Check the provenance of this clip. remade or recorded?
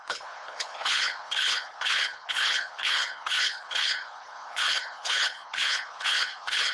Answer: remade